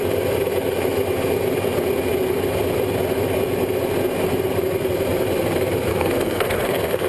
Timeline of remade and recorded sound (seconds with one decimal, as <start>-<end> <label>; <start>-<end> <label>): 0.0-5.9 recorded; 5.9-7.1 remade